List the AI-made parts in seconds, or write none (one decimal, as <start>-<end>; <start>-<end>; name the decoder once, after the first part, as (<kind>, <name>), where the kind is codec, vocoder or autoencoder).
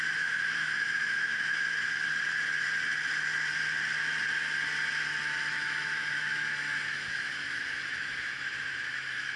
0.0-2.1 (autoencoder, DAC-VAE); 5.5-9.4